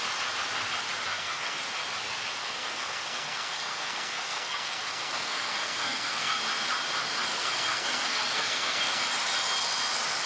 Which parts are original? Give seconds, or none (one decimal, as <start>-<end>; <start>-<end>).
0.0-1.1; 1.6-2.4; 6.4-7.3; 9.0-10.3